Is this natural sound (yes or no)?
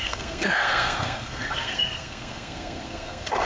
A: no